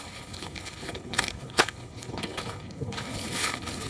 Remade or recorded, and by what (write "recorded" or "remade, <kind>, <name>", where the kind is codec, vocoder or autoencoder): remade, codec, HILCodec